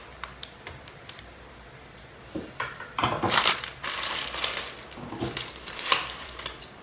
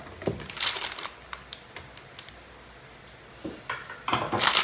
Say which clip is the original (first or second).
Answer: second